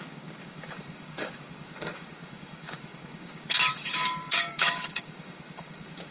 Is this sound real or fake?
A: fake